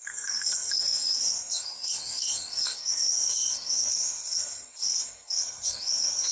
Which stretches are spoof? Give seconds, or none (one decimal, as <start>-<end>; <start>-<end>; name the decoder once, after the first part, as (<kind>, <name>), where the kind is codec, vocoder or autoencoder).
0.0-6.3 (codec, SNAC)